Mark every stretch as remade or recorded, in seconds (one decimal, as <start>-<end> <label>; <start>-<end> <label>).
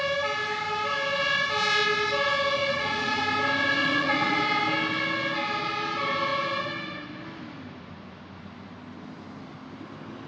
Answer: 0.0-2.6 recorded; 2.6-3.2 remade; 3.2-3.8 recorded; 3.8-4.4 remade; 4.4-10.3 recorded